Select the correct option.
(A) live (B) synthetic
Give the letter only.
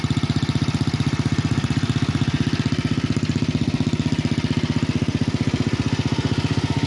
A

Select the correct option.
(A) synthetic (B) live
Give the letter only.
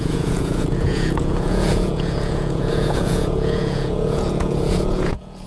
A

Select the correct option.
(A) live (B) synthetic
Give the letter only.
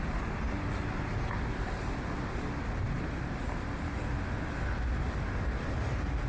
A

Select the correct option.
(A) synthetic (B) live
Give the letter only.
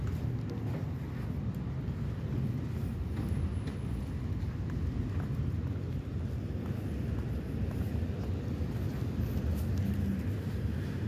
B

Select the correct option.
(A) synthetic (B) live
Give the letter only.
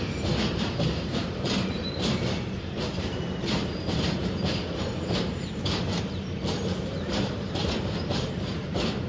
A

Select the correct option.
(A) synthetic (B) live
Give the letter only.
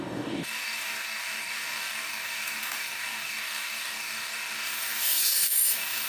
A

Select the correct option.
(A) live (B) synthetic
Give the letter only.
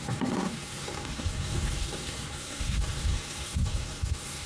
B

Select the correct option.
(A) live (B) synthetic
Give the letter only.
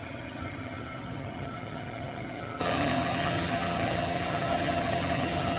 B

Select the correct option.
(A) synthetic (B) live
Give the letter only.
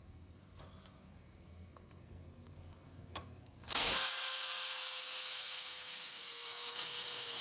A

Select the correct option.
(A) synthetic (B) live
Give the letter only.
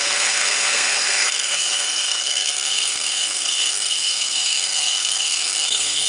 A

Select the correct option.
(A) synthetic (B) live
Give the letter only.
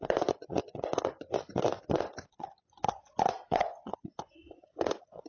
A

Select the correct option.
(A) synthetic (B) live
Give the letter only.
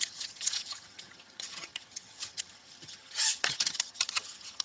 A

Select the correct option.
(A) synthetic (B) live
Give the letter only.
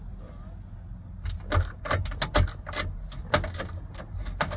B